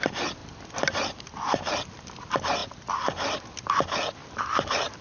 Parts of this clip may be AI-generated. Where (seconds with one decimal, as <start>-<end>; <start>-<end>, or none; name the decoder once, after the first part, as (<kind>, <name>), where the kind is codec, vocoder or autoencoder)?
0.4-1.2 (vocoder, BigVGAN v2); 2.6-3.5; 4.2-5.0